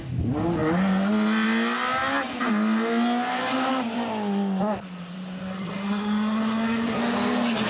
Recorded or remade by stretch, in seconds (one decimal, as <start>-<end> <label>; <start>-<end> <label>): 0.0-5.4 recorded; 5.4-7.0 remade; 7.0-7.7 recorded